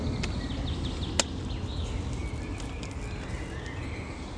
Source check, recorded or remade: recorded